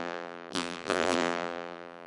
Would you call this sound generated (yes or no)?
yes